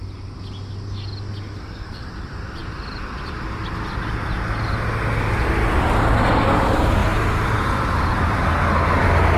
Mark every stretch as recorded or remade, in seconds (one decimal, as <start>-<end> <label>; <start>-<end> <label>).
0.0-1.6 recorded; 1.6-2.1 remade; 2.1-9.4 recorded